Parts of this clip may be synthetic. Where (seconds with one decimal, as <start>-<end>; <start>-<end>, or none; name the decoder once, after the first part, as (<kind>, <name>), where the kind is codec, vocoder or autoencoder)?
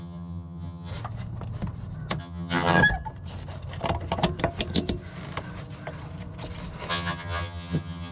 0.0-0.9 (vocoder, HiFi-GAN); 2.2-2.8; 6.9-8.1